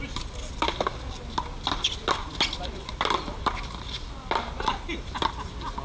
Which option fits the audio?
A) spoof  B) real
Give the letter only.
B